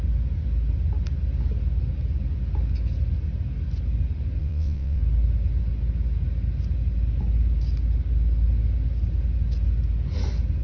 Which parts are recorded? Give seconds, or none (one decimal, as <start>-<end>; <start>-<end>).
0.0-4.4; 5.0-10.6